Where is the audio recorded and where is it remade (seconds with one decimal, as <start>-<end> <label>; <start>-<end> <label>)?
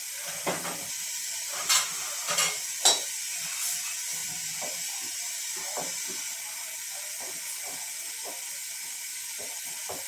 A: 0.0-10.1 recorded